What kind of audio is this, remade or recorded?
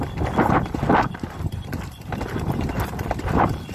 recorded